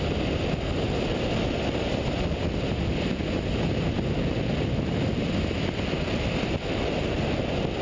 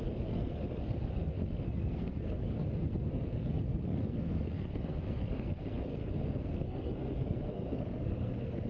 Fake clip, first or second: second